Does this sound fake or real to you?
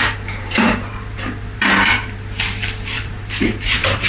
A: fake